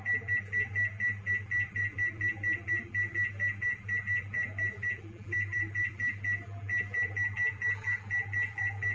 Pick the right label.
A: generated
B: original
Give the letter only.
A